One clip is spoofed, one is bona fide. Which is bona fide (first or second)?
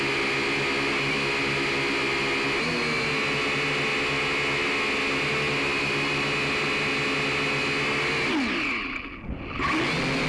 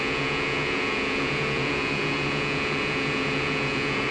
first